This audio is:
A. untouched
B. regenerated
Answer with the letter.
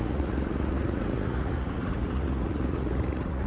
B